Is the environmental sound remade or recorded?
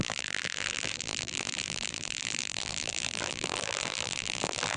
remade